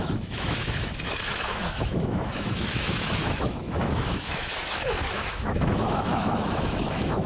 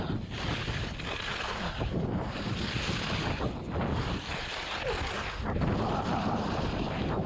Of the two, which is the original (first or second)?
second